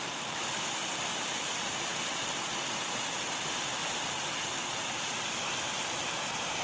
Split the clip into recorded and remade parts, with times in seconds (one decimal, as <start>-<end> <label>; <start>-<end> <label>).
0.0-6.6 recorded